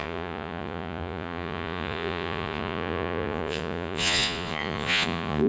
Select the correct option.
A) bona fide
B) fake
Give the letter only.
B